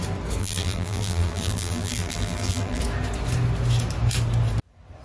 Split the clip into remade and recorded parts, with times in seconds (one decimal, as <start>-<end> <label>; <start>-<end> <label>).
0.0-0.4 recorded; 0.4-2.8 remade; 2.8-5.0 recorded